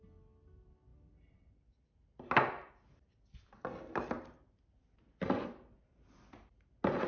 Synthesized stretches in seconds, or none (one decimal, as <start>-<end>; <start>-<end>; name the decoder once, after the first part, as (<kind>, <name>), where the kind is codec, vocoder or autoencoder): none